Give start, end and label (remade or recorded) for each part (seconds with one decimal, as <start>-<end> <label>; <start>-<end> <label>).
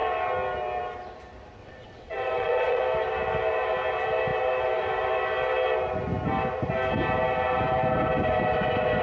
0.0-1.6 recorded; 1.6-2.8 remade; 2.8-9.0 recorded